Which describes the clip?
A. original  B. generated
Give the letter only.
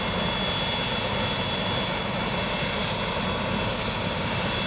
A